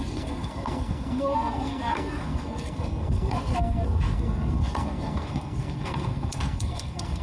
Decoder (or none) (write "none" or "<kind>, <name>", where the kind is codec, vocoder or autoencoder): codec, SNAC